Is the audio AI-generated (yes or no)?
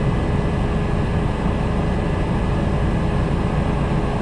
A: no